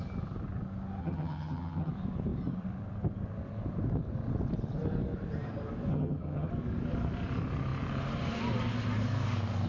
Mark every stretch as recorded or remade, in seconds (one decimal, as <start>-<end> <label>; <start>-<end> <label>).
0.0-1.0 recorded; 1.0-1.9 remade; 1.9-5.9 recorded; 5.9-6.5 remade; 6.5-9.7 recorded